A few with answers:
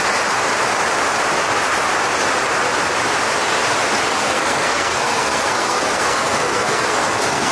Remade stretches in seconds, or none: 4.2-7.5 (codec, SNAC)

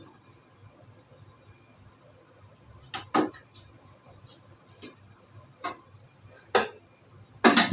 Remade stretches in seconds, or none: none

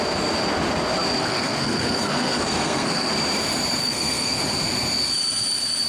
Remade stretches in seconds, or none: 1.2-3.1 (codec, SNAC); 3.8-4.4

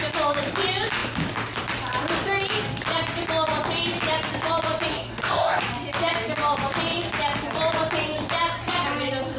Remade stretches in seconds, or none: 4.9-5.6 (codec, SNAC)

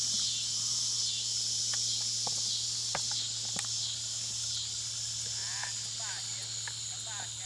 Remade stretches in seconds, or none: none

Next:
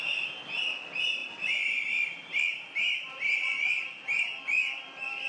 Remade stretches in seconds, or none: none

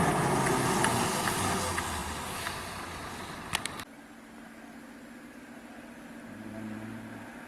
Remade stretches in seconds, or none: none

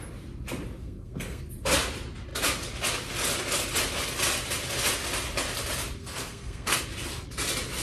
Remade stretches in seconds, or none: 0.8-1.4 (codec, SNAC); 6.0-6.8